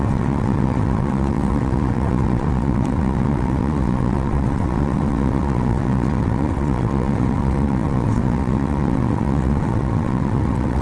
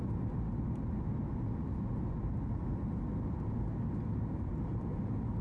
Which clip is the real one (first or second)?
second